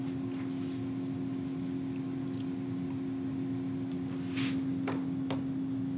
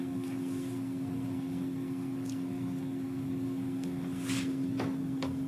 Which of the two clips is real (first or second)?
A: first